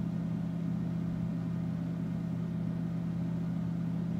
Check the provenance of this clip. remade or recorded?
recorded